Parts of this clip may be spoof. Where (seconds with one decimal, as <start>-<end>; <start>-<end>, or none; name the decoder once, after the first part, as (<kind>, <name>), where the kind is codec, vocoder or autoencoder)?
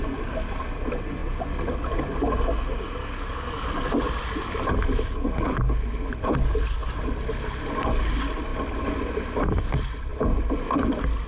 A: 3.0-3.9 (codec, DAC)